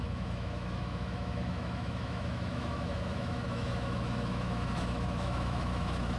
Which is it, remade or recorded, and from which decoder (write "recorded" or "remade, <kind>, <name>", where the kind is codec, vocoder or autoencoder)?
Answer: remade, autoencoder, DAC-VAE